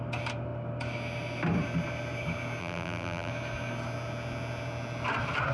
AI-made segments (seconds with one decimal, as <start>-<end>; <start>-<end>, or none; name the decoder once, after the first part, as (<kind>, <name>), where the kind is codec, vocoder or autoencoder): 2.6-3.3 (vocoder, BigVGAN v2)